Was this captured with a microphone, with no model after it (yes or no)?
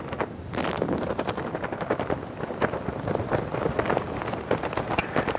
yes